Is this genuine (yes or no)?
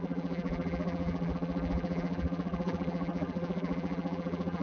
no